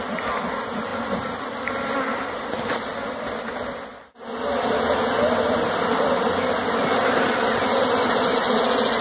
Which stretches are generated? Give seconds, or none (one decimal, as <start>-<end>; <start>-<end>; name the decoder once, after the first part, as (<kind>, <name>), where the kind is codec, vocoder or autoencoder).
none